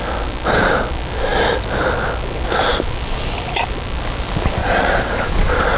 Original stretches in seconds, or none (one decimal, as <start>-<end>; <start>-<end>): 0.0-4.6